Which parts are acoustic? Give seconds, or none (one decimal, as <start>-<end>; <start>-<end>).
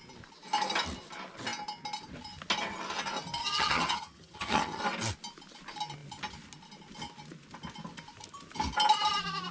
0.0-3.4; 4.8-9.5